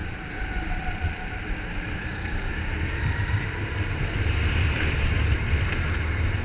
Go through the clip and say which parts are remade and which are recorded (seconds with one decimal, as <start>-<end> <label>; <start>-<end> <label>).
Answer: 0.0-6.4 recorded